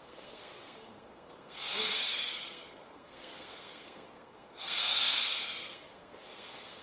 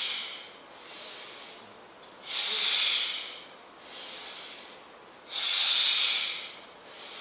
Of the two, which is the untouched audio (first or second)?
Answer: second